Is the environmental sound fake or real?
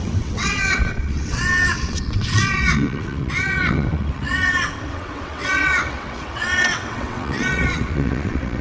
fake